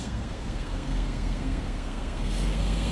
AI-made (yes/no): yes